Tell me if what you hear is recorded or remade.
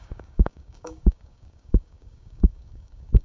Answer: remade